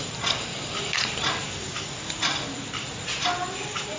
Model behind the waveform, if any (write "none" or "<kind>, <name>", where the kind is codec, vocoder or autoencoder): none